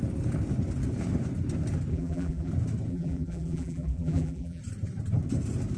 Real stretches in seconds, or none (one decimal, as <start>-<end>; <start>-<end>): 0.0-1.9; 2.5-2.9; 4.6-5.8

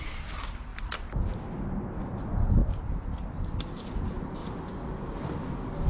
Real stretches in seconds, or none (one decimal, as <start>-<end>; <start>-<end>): 0.0-5.9

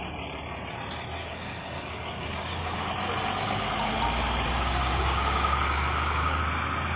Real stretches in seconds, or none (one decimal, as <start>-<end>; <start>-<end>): 0.0-1.2; 2.9-4.8; 6.4-7.0

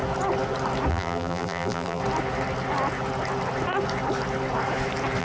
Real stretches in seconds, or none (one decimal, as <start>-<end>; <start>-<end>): 0.0-0.9; 2.0-5.2

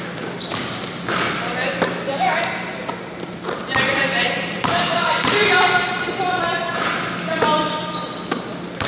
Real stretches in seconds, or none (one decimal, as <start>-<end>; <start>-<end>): 0.0-2.1; 6.4-8.9

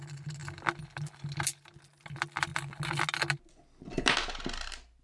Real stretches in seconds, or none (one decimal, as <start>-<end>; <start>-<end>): 0.0-5.0